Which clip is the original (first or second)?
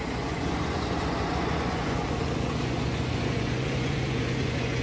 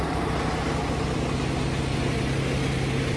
second